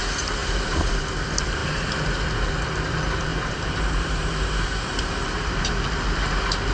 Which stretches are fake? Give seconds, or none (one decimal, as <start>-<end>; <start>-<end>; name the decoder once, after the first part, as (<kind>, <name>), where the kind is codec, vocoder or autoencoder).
0.4-1.0 (vocoder, BigVGAN v2); 3.3-5.7